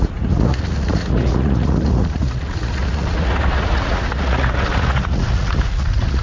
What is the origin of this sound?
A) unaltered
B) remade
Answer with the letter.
B